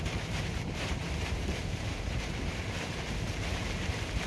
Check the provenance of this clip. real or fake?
fake